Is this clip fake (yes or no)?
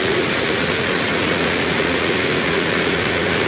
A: yes